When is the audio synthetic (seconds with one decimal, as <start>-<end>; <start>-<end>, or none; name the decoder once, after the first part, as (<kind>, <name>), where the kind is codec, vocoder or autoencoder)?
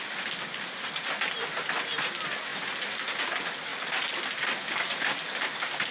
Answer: 2.5-3.2 (vocoder, BigVGAN v2); 3.7-4.6